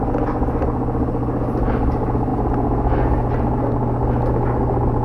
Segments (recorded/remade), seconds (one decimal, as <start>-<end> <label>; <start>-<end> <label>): 0.0-5.0 recorded